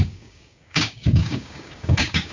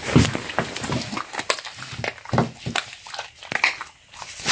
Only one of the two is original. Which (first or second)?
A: second